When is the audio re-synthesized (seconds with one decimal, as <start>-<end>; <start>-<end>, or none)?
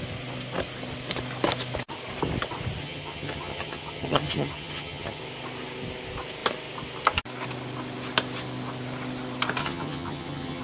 2.8-5.2; 9.6-10.6